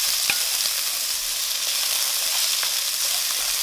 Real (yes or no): no